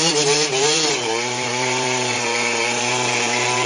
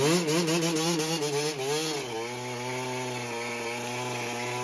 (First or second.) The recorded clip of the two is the second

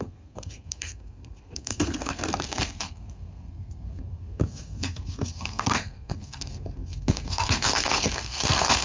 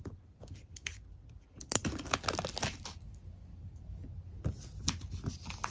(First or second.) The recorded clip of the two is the second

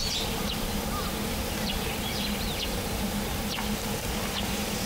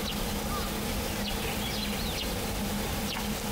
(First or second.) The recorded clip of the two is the second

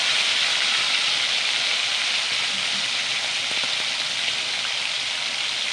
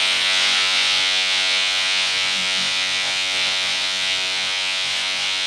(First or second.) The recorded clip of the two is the first